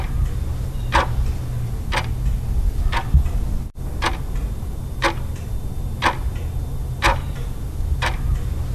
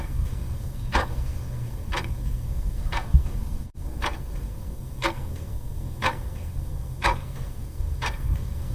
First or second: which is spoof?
second